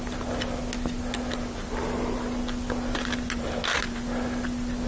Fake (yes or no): no